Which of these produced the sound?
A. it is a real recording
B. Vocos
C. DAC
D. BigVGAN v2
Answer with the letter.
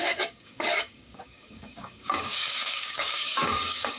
C